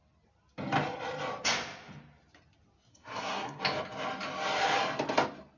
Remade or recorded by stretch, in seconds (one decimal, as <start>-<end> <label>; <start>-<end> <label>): 0.0-2.9 recorded; 2.9-3.6 remade; 3.6-5.6 recorded